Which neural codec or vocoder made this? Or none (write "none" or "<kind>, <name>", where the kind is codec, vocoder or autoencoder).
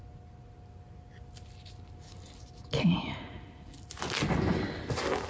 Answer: none